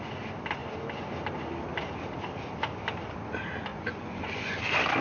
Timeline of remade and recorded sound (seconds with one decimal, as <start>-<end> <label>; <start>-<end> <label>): 0.0-3.7 recorded; 3.7-4.6 remade; 4.6-5.0 recorded